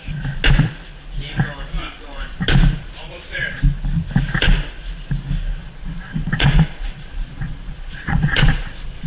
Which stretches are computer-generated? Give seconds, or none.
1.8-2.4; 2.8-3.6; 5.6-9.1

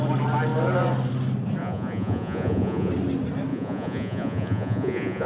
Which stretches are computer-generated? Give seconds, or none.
1.6-2.9; 3.5-5.3

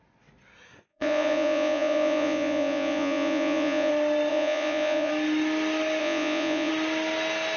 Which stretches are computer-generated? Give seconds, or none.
0.9-3.9; 4.3-5.1; 6.0-6.7

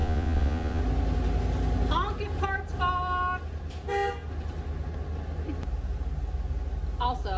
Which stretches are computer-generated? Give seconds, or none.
0.0-0.8

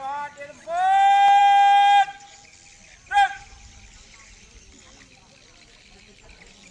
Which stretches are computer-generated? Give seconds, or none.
none

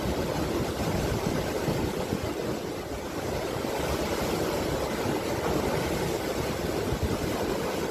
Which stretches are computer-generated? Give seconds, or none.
none